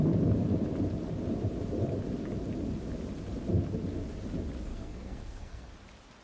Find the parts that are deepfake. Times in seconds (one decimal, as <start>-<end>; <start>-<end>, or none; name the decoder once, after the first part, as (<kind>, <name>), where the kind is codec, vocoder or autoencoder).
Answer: 4.7-5.7 (codec, SNAC)